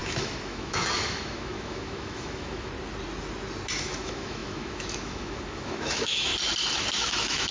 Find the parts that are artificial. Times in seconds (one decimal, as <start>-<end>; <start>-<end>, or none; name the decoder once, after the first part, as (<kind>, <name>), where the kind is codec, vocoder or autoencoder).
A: 0.0-2.7 (autoencoder, DAC-VAE); 3.8-6.3; 6.9-7.5